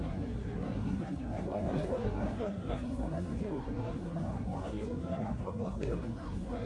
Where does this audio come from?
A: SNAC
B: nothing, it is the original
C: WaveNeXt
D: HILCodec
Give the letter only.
A